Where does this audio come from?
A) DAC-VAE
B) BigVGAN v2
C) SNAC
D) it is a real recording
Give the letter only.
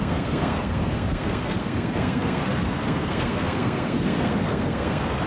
C